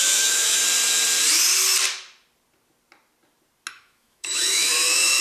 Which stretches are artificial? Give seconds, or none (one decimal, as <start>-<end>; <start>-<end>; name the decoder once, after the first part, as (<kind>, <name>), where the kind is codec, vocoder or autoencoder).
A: 0.0-0.6 (autoencoder, DAC-VAE); 3.7-5.2